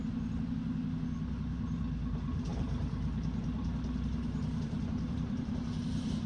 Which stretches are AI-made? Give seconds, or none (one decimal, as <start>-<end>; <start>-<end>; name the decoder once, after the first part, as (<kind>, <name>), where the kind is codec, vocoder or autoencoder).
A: 2.5-6.3 (vocoder, BigVGAN v2)